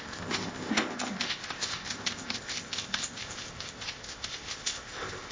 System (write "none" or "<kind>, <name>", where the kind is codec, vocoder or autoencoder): codec, ZipCodec